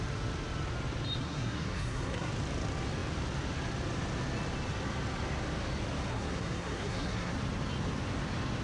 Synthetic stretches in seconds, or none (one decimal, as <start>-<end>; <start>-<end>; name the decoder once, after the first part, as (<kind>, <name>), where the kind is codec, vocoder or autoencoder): 1.2-2.3 (codec, SNAC); 6.1-7.3